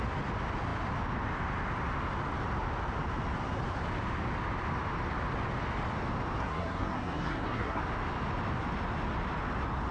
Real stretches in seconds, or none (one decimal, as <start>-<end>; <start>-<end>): 0.0-6.4; 7.8-9.9